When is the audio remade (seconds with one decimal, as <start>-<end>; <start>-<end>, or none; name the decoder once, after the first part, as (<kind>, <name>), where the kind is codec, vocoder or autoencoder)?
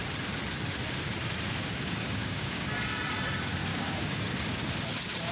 1.6-2.7 (codec, DAC); 3.7-4.2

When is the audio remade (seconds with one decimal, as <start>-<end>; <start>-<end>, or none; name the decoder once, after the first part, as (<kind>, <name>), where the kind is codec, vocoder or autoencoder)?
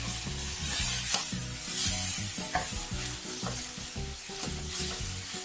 none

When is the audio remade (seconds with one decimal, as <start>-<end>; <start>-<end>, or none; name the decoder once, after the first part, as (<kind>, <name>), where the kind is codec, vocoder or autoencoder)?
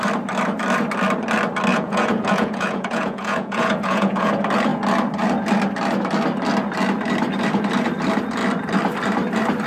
1.7-4.3 (vocoder, Vocos)